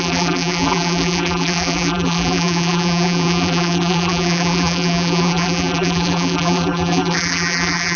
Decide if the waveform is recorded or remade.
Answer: remade